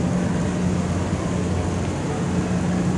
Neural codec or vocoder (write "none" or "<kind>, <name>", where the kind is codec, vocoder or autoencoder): none